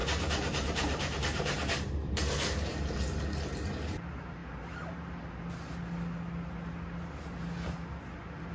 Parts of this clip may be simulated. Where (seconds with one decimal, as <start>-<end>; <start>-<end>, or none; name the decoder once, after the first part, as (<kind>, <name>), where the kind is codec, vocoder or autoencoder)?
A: 0.0-4.0 (vocoder, BigVGAN v2)